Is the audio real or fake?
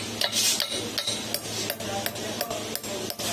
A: real